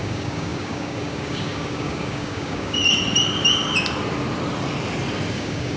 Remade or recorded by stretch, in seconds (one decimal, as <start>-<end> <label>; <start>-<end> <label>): 0.0-2.8 remade; 2.8-5.3 recorded; 5.3-5.8 remade